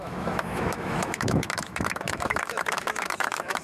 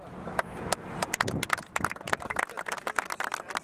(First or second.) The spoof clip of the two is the first